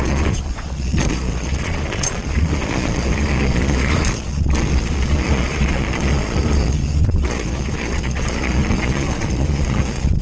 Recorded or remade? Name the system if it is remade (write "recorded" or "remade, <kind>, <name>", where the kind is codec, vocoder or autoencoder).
remade, vocoder, Vocos